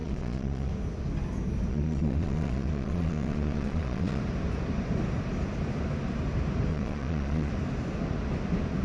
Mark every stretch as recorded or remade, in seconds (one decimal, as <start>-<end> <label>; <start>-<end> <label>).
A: 0.0-0.7 remade; 0.7-1.7 recorded; 1.7-4.2 remade; 4.2-6.7 recorded; 6.7-7.5 remade; 7.5-8.8 recorded